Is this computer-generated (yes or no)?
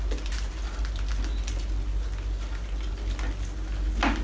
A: no